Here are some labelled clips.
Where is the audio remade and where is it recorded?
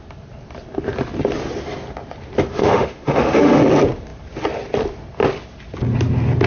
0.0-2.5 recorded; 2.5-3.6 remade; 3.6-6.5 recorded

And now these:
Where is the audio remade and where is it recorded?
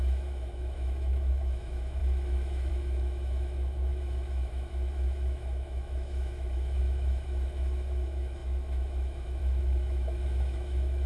0.0-11.1 remade